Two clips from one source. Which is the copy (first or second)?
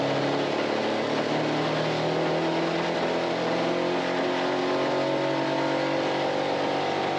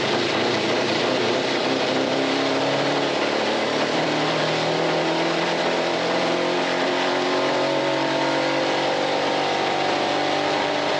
second